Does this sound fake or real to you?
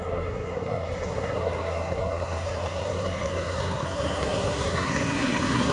fake